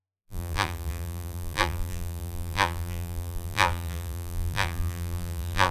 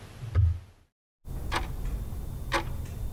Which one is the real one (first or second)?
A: second